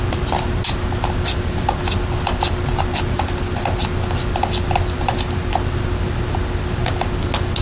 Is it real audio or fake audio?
real